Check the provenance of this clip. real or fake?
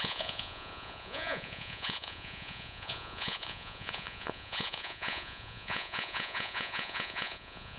fake